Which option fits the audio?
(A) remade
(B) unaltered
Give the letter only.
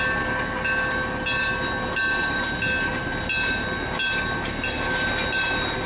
B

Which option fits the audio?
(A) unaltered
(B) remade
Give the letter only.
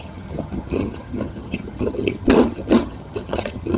B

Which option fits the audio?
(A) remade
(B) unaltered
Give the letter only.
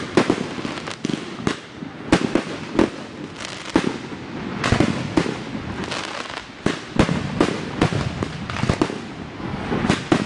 B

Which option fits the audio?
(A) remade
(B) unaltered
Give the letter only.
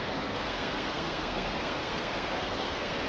A